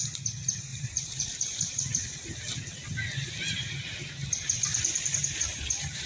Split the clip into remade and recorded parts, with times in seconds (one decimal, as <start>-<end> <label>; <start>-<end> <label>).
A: 0.0-0.7 recorded; 0.7-1.9 remade; 1.9-5.2 recorded; 5.2-6.1 remade